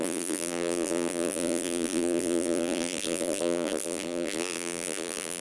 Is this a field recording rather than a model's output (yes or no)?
no